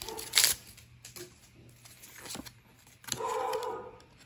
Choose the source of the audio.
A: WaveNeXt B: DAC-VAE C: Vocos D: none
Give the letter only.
D